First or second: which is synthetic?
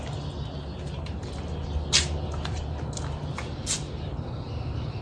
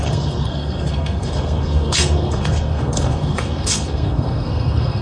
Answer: second